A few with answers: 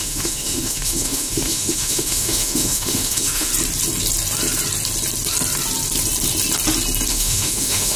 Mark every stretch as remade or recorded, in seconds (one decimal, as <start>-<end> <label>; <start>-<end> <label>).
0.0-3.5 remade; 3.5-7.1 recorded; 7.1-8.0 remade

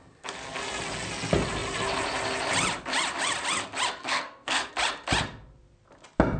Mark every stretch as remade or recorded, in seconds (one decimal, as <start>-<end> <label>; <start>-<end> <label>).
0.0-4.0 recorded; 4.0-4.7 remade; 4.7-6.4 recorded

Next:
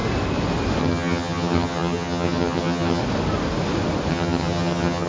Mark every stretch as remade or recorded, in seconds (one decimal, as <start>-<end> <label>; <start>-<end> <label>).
0.0-0.8 recorded; 0.8-3.0 remade; 3.0-4.1 recorded; 4.1-5.1 remade

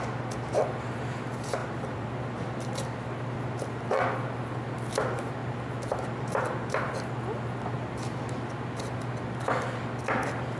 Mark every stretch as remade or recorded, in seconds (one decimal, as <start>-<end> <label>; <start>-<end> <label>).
0.0-1.6 recorded; 1.6-3.0 remade; 3.0-10.6 recorded

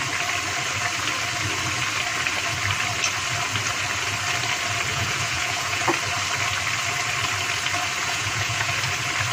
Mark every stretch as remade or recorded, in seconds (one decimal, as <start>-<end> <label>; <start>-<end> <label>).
0.0-4.9 recorded; 4.9-5.8 remade; 5.8-8.0 recorded; 8.0-8.7 remade; 8.7-9.3 recorded

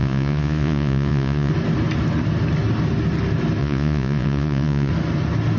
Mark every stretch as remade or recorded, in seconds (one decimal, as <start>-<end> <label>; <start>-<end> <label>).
0.0-1.5 remade; 1.5-3.6 recorded; 3.6-4.9 remade; 4.9-5.6 recorded

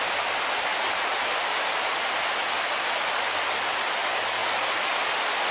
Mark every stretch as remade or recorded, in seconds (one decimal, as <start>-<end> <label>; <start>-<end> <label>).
0.0-5.5 recorded

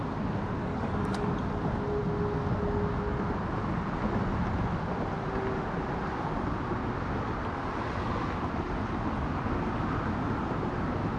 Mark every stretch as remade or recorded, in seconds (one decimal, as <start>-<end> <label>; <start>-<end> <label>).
0.0-0.6 recorded; 0.6-1.3 remade; 1.3-11.2 recorded